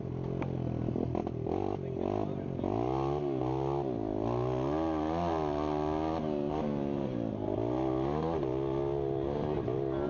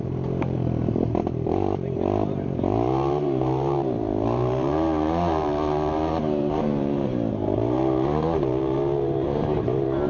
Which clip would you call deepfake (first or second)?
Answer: second